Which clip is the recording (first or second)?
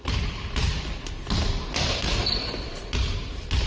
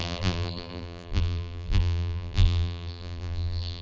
first